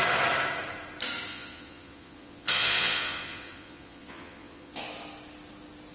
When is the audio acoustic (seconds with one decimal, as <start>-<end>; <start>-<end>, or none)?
0.0-1.3; 4.8-5.9